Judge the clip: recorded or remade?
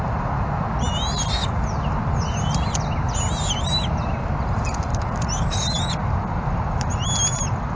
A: recorded